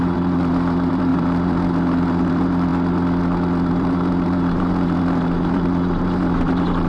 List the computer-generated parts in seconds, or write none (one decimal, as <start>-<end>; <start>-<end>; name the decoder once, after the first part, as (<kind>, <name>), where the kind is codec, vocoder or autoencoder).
0.0-2.7 (vocoder, BigVGAN v2); 3.7-6.9